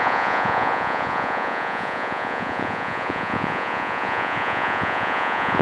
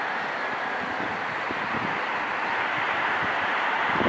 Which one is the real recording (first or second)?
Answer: second